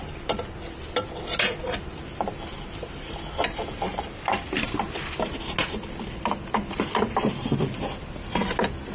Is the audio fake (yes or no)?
no